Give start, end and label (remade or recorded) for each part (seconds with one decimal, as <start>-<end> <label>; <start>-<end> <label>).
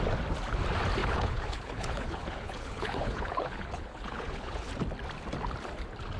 0.0-1.0 recorded; 1.0-4.7 remade; 4.7-6.2 recorded